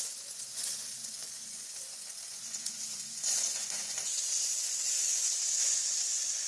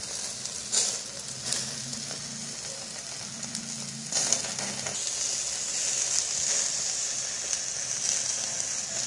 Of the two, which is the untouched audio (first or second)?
second